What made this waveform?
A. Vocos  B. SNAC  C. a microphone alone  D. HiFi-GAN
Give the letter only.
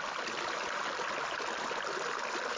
C